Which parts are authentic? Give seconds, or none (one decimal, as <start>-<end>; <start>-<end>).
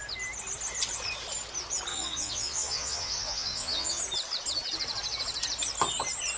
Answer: 0.0-1.9; 4.0-6.4